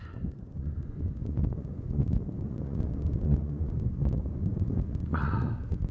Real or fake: fake